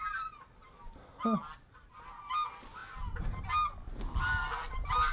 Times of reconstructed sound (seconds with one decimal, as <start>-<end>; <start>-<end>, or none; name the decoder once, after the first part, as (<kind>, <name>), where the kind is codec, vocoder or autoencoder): none